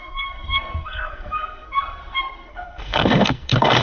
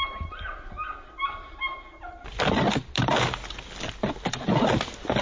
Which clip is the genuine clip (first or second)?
second